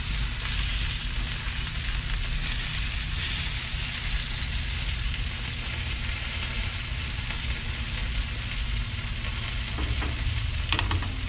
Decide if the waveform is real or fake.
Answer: real